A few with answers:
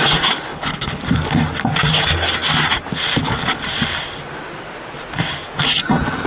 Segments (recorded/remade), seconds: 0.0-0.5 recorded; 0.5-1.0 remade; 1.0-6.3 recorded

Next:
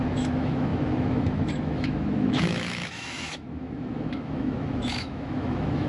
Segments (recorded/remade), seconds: 0.0-5.9 remade

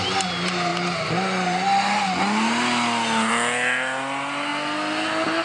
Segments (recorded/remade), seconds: 0.0-5.4 recorded